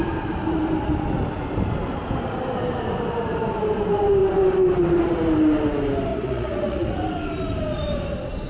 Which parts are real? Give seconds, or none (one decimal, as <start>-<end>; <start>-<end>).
0.0-6.1; 7.0-8.5